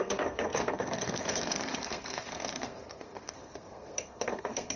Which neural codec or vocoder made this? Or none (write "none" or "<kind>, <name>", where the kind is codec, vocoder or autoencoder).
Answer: codec, SNAC